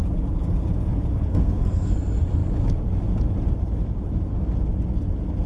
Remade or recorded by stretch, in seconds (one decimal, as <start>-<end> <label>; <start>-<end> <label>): 0.0-1.3 recorded; 1.3-1.9 remade; 1.9-5.5 recorded